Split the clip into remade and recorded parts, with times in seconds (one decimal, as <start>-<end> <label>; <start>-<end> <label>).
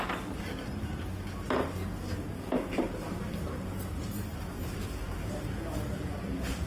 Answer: 0.0-2.3 recorded; 2.3-6.3 remade; 6.3-6.7 recorded